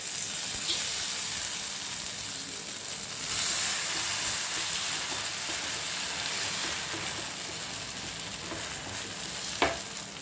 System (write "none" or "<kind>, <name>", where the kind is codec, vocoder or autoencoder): none